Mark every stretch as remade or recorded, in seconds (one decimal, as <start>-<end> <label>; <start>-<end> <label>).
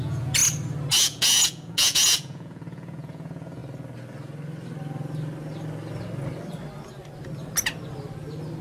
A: 0.0-0.4 remade; 0.4-1.0 recorded; 1.0-3.6 remade; 3.6-8.6 recorded